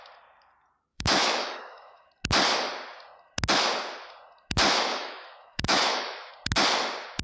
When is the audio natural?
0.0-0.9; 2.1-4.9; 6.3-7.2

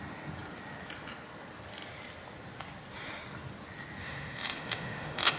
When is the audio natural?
0.0-4.0

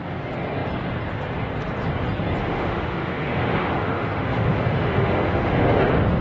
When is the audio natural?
0.0-2.4; 5.8-6.2